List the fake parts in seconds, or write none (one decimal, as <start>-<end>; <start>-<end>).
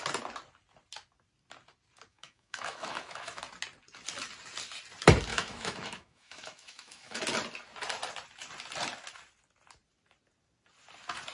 2.1-3.4; 5.3-7.2